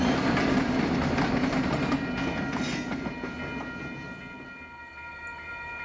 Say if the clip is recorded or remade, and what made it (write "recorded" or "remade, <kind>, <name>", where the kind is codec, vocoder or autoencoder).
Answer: recorded